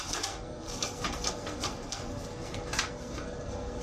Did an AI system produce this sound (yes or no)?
yes